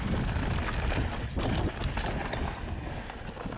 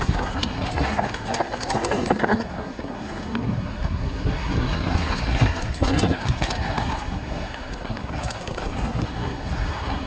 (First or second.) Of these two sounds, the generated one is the second